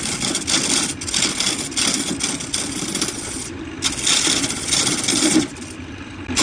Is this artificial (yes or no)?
no